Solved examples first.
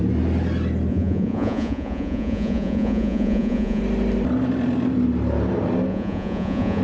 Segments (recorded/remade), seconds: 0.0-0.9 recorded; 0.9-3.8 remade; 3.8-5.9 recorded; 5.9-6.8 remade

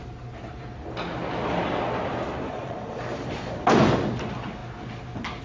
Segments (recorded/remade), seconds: 0.0-2.5 recorded; 2.5-3.0 remade; 3.0-5.4 recorded

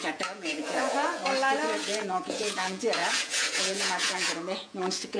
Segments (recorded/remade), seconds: 0.0-1.2 remade; 1.2-1.8 recorded; 1.8-5.2 remade

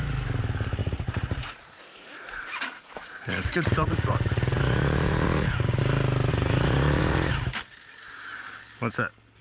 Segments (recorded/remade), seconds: 0.0-0.8 recorded; 0.8-5.8 remade; 5.8-6.3 recorded; 6.3-7.3 remade; 7.3-9.4 recorded

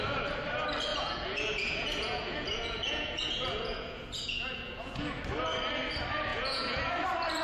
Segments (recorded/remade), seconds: 0.0-0.9 recorded; 0.9-5.2 remade; 5.2-6.3 recorded; 6.3-6.9 remade; 6.9-7.4 recorded